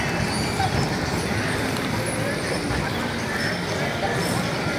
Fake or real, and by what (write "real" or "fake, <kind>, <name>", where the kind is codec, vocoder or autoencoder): real